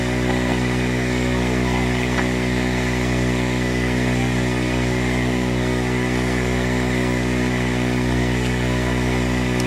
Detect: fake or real fake